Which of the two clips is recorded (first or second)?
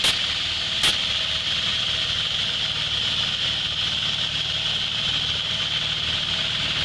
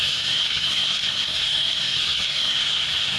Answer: first